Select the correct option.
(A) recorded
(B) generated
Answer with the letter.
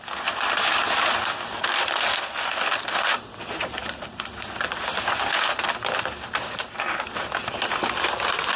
A